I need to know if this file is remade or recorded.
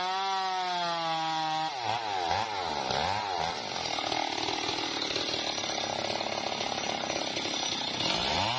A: recorded